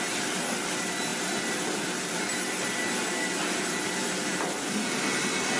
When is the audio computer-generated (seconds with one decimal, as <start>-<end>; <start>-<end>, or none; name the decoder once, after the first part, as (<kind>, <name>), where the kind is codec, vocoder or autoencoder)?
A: none